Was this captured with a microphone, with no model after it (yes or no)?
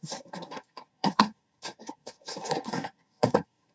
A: no